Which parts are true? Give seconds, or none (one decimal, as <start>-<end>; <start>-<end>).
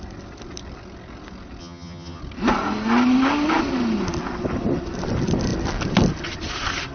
0.0-1.6; 2.2-6.9